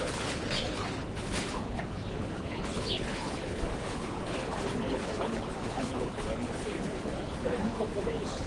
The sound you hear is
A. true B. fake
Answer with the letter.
B